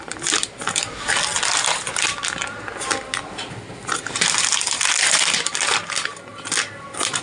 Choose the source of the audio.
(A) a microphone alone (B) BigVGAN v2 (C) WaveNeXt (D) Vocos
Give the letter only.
A